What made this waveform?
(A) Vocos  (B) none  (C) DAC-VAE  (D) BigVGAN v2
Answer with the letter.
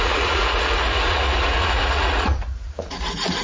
A